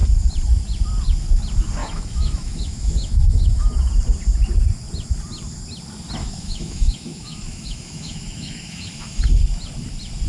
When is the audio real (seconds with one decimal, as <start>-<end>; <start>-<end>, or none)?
0.0-1.8; 3.9-6.2; 9.2-10.3